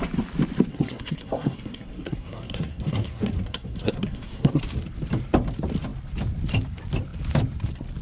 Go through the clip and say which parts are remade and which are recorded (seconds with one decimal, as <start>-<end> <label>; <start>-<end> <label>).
0.0-0.7 recorded; 0.7-4.6 remade; 4.6-8.0 recorded